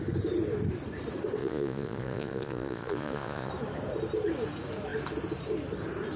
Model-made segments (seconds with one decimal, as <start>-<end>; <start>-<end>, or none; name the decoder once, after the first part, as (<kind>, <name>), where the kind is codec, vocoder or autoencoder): 1.4-3.5 (vocoder, Vocos)